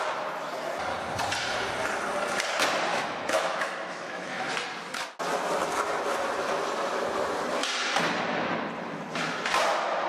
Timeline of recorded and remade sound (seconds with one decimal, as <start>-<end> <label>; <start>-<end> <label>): 0.0-2.9 recorded; 2.9-4.5 remade; 4.5-10.1 recorded